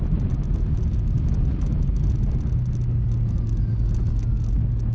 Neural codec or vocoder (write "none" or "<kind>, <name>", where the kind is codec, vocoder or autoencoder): none